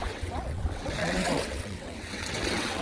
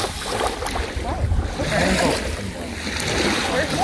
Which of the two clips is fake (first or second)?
first